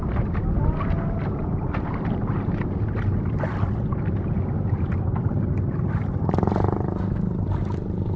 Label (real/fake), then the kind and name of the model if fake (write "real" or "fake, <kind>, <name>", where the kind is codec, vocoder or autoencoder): real